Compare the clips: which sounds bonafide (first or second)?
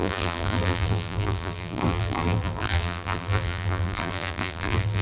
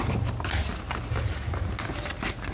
second